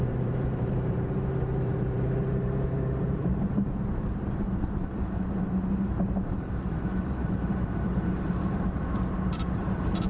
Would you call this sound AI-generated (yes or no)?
yes